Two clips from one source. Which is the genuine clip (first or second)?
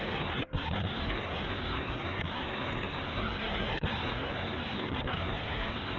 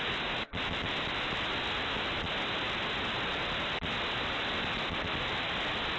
second